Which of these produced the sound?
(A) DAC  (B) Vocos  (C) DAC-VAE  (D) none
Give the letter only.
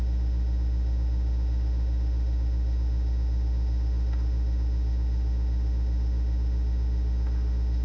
C